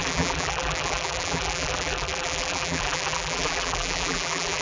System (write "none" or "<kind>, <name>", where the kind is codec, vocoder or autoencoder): vocoder, BigVGAN v2